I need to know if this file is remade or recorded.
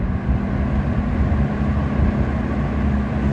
recorded